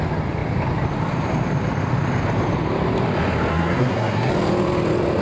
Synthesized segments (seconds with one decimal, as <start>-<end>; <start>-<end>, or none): 3.5-4.3

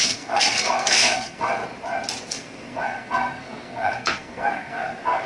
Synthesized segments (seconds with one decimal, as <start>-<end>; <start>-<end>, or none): 0.0-1.6; 2.3-5.3

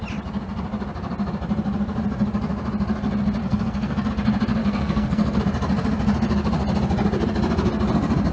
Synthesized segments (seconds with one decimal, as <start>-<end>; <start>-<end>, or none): 3.4-4.1; 4.6-5.4

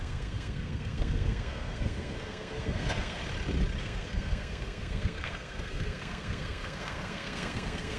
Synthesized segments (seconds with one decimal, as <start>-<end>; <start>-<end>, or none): 0.0-3.2; 3.8-8.0

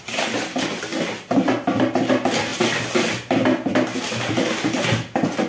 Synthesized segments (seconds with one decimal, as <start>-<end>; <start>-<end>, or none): none

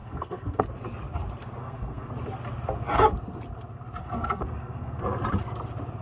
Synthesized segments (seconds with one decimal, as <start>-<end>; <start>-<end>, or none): 0.0-0.6; 1.6-2.1; 4.0-5.0

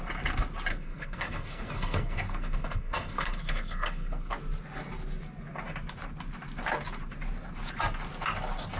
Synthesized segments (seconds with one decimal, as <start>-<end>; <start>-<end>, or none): 0.7-4.3

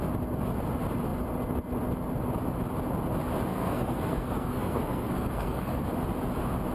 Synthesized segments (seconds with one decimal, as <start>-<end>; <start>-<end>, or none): 3.5-5.8